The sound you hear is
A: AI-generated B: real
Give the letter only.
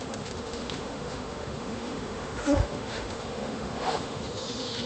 A